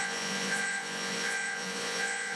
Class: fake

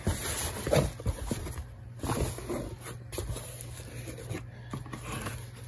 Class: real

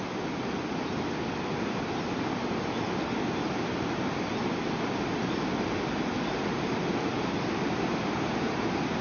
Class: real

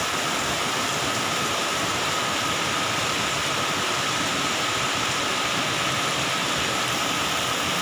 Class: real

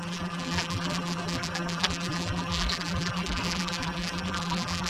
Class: fake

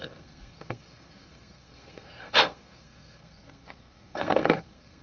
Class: fake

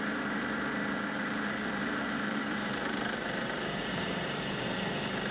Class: fake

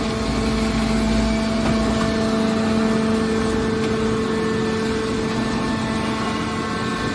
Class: real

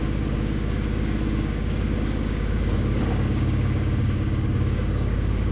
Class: fake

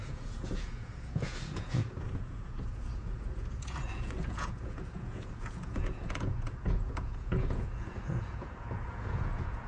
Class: fake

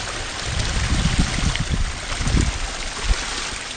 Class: real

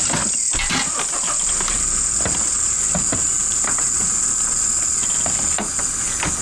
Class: real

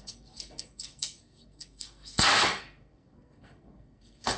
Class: fake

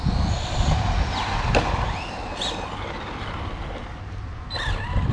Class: real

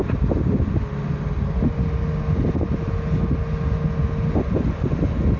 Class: real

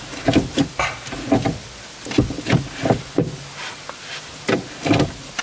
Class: real